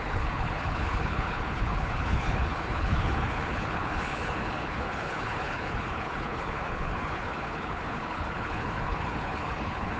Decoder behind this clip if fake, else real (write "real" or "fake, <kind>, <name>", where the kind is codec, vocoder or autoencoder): fake, codec, HILCodec